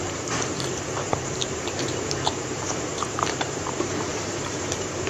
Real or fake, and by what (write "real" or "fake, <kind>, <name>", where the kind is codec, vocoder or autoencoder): fake, vocoder, BigVGAN v2